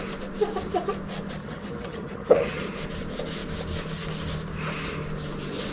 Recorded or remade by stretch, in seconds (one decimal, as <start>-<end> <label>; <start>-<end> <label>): 0.0-1.4 recorded; 1.4-2.6 remade; 2.6-5.7 recorded